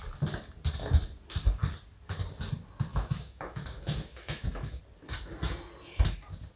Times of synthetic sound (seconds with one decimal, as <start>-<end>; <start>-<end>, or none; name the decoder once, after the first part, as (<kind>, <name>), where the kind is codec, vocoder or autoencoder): 2.9-4.8 (autoencoder, DAC-VAE)